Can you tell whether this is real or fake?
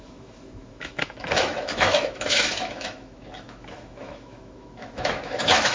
fake